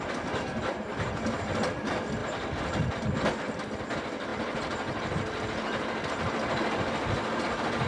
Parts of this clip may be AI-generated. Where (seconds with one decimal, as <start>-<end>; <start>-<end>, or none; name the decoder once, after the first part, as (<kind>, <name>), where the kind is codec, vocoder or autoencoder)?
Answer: none